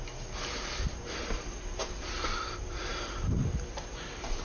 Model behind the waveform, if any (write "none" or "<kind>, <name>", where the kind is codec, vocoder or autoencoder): vocoder, BigVGAN v2